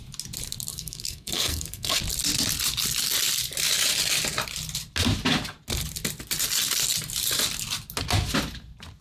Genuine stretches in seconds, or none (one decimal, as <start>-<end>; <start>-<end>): 0.0-0.7; 2.0-9.0